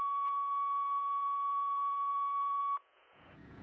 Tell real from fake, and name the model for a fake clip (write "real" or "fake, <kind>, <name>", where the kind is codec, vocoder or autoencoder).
fake, vocoder, Vocos